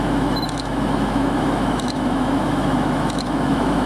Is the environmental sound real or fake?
fake